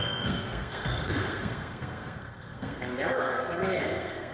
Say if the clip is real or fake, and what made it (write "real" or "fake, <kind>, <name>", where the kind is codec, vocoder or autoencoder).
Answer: fake, codec, SNAC